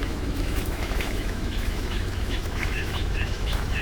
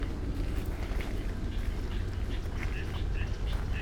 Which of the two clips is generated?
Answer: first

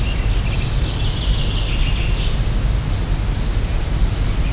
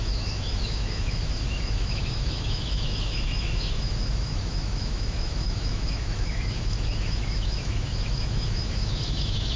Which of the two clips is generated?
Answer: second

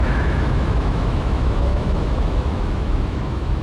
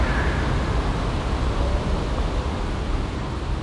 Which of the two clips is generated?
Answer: first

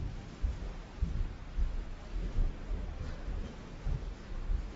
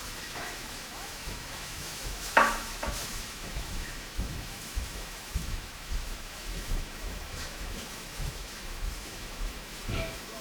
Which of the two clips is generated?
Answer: second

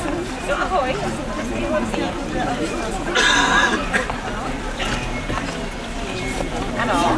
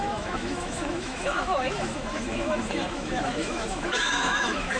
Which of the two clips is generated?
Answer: second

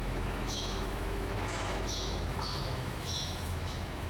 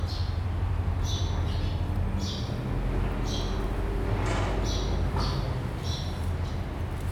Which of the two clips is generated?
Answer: first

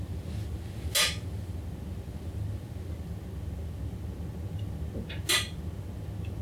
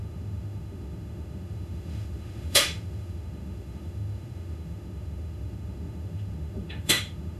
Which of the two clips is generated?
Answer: second